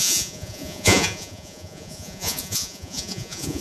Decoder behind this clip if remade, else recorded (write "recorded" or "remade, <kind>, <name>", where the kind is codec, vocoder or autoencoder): remade, vocoder, Vocos